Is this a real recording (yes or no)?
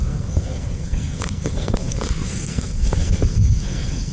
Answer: no